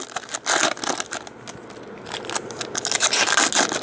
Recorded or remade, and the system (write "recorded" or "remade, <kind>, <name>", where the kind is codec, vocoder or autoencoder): recorded